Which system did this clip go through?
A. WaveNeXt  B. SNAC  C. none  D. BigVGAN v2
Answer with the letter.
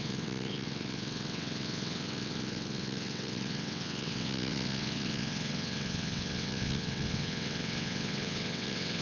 A